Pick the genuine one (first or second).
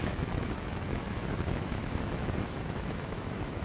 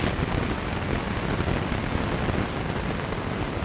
second